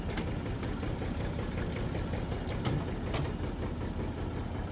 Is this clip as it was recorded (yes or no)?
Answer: yes